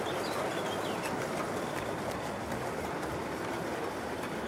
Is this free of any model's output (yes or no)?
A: yes